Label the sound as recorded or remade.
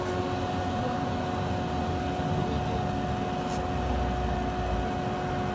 recorded